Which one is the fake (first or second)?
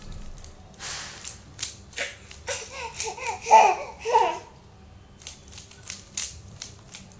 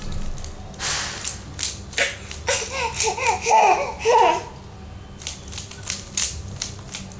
first